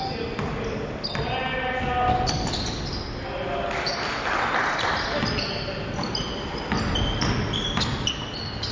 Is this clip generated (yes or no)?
no